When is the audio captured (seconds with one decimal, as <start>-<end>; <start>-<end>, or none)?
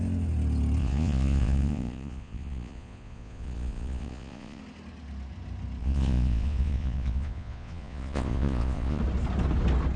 0.0-0.8; 4.6-5.8; 9.0-10.0